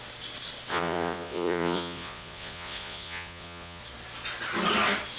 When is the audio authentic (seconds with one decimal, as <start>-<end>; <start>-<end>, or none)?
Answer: 0.0-0.7; 3.8-5.2